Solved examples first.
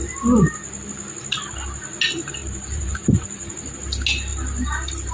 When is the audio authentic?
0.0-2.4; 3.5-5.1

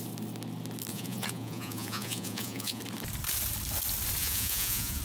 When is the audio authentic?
0.0-0.9; 2.8-4.2

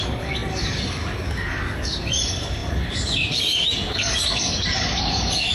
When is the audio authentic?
none